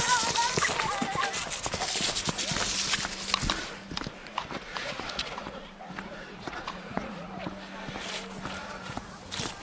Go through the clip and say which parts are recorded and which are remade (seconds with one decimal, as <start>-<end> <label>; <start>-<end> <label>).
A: 0.0-4.2 recorded; 4.2-7.5 remade; 7.5-8.6 recorded; 8.6-9.2 remade; 9.2-9.6 recorded